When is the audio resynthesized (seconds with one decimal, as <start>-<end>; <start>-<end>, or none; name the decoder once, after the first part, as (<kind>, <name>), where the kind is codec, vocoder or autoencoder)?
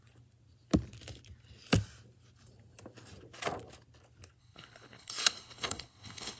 4.4-6.4 (codec, HILCodec)